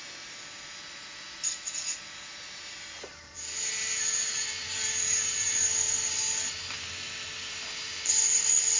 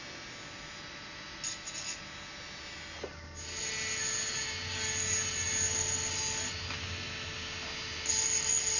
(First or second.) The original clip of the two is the second